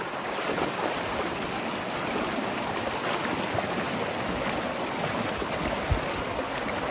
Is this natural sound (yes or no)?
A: yes